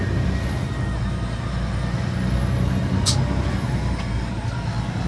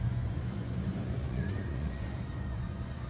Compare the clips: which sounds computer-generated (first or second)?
second